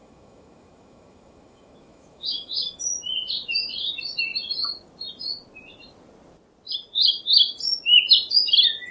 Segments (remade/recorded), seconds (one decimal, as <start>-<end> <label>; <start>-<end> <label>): 0.0-2.8 remade; 2.8-8.9 recorded